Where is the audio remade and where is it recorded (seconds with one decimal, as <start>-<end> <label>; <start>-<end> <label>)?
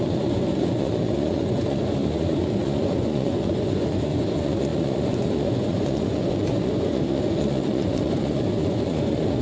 0.0-9.4 remade